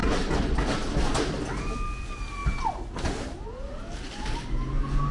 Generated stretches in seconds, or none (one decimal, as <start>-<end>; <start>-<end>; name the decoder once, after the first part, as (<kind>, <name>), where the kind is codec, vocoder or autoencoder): none

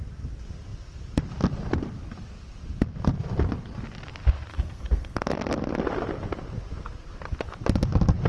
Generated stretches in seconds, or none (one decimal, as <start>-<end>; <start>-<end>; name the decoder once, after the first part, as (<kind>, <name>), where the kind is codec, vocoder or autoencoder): 4.5-5.4 (codec, SNAC)

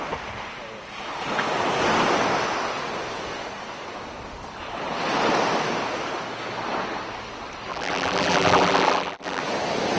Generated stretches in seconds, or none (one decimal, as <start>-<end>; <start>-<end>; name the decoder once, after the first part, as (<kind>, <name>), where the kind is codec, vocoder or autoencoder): 7.7-9.4 (vocoder, BigVGAN v2)

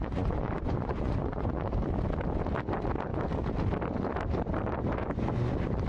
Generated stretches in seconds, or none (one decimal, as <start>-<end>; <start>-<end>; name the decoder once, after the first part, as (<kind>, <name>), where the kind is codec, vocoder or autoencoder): 0.0-1.8 (vocoder, Vocos)

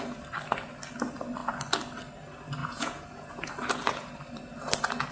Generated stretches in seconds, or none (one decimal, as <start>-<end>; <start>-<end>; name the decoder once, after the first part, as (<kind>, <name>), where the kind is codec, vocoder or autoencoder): 2.6-3.5 (vocoder, Vocos)

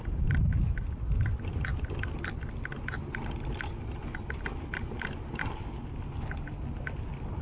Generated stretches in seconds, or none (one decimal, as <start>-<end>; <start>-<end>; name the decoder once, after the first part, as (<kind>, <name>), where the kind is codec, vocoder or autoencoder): none

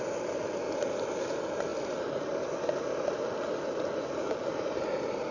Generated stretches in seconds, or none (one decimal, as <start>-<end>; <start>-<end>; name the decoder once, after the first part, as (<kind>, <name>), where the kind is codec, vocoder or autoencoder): none

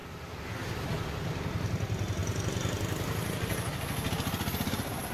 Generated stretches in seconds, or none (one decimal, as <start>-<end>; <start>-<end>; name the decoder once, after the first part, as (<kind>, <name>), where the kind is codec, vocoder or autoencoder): none